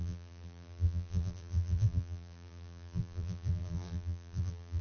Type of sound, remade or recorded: remade